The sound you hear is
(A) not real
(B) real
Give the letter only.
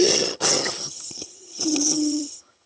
A